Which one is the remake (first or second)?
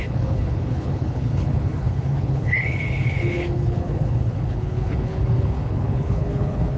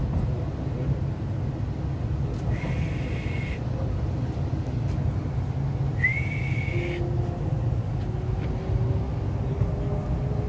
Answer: first